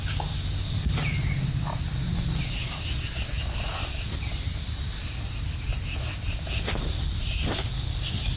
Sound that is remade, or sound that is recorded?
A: recorded